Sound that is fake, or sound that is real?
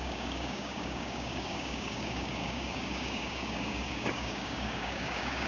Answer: fake